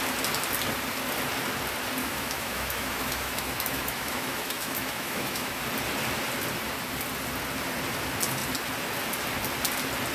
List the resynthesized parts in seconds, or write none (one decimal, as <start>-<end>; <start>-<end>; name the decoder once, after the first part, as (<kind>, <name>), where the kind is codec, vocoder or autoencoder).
2.0-5.6 (autoencoder, DAC-VAE)